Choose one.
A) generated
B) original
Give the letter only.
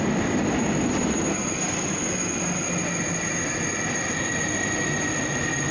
B